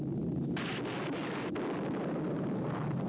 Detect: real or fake real